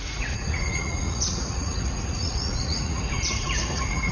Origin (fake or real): fake